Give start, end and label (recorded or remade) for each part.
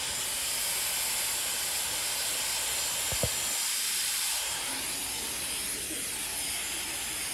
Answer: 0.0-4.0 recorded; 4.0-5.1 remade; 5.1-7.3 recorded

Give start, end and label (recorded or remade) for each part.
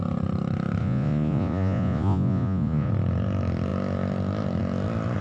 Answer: 0.0-0.8 recorded; 0.8-2.9 remade; 2.9-5.2 recorded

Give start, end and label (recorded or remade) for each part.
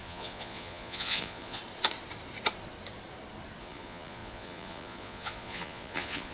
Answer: 0.0-1.6 remade; 1.6-3.6 recorded; 3.6-6.3 remade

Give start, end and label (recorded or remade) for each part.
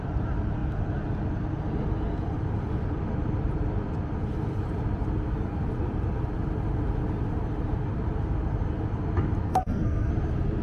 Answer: 0.0-9.5 recorded; 9.5-10.1 remade; 10.1-10.6 recorded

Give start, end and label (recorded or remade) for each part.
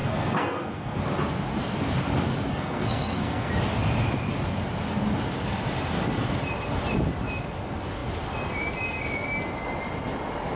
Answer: 0.0-1.0 remade; 1.0-2.5 recorded; 2.5-3.5 remade; 3.5-10.6 recorded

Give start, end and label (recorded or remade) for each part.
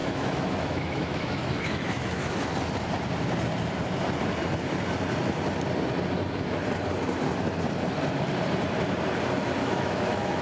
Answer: 0.0-2.5 remade; 2.5-9.6 recorded; 9.6-10.4 remade